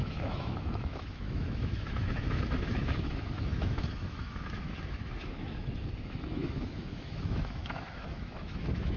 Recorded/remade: remade